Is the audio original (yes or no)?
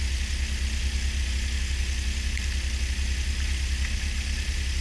yes